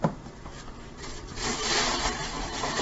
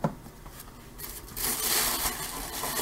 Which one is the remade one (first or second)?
first